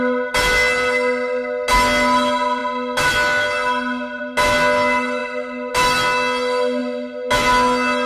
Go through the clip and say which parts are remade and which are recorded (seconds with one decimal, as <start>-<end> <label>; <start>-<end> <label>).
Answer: 0.0-8.1 recorded